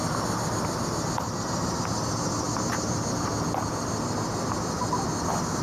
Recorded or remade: recorded